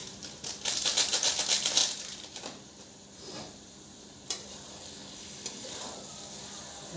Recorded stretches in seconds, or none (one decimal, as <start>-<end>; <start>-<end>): 0.5-1.8; 4.7-7.0